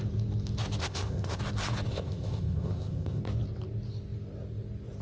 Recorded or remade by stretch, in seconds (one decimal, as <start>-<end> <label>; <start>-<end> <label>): 0.0-0.8 recorded; 0.8-1.4 remade; 1.4-1.9 recorded; 1.9-3.2 remade; 3.2-5.0 recorded